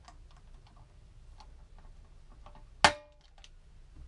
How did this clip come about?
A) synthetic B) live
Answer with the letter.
B